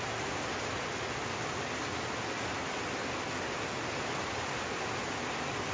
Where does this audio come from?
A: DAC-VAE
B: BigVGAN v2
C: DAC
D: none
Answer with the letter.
D